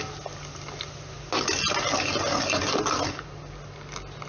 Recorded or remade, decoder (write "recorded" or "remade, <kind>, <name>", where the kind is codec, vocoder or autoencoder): recorded